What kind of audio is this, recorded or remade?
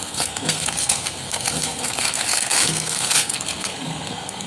remade